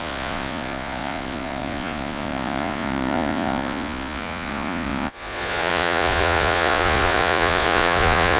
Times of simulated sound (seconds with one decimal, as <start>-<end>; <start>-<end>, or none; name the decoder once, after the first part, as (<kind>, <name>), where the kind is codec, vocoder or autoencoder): 0.0-8.4 (vocoder, Vocos)